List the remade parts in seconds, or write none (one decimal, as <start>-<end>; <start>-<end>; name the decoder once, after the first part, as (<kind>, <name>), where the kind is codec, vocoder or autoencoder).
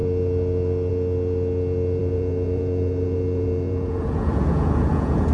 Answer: 2.0-5.3 (vocoder, Vocos)